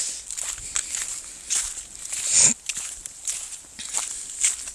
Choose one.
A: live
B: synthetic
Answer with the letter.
A